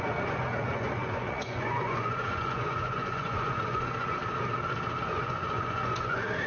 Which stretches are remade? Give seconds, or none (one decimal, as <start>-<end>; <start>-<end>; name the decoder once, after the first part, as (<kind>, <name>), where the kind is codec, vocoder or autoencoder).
0.0-4.2 (vocoder, Vocos); 5.0-6.5